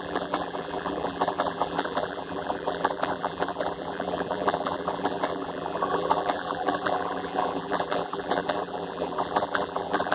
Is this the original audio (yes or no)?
no